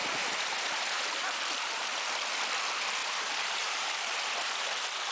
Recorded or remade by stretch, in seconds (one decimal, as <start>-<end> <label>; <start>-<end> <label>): 0.0-1.4 remade; 1.4-3.0 recorded; 3.0-4.6 remade; 4.6-5.1 recorded